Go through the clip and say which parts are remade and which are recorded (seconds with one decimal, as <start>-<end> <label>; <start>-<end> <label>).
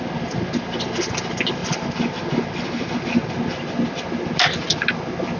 0.0-5.4 recorded